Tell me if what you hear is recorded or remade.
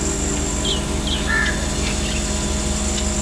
recorded